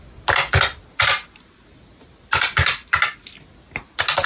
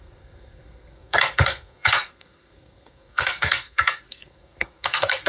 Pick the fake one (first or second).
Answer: second